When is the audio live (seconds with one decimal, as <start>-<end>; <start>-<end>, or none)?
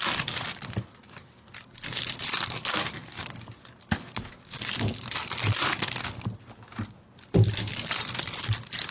0.0-8.9